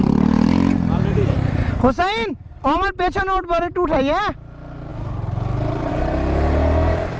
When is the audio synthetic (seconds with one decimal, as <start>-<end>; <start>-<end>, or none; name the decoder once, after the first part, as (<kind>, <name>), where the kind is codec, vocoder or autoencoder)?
none